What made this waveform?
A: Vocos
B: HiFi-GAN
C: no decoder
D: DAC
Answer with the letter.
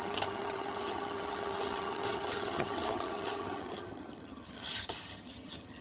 B